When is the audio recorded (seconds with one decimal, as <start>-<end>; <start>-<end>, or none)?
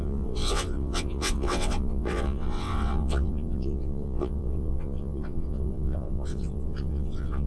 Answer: none